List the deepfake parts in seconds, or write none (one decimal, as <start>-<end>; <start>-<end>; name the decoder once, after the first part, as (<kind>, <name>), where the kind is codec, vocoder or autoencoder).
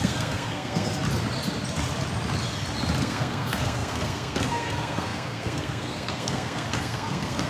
0.0-0.9 (codec, SNAC); 3.0-7.5